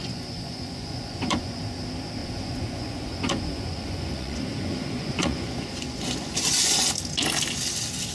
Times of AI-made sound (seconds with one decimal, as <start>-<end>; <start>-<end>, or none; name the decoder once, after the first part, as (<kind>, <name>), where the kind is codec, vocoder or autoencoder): 0.0-1.6 (vocoder, Vocos); 2.2-6.9